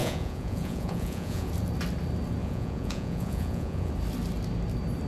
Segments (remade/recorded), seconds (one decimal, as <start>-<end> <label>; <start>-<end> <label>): 0.0-1.5 remade; 1.5-2.4 recorded; 2.4-3.9 remade; 3.9-5.1 recorded